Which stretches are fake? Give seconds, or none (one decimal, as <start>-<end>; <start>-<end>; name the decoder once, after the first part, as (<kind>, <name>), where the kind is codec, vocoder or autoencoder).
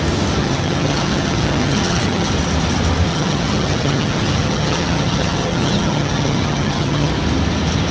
0.4-2.3 (vocoder, HiFi-GAN); 3.1-7.1